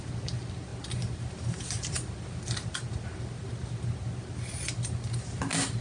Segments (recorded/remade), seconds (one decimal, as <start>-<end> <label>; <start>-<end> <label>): 0.0-5.8 recorded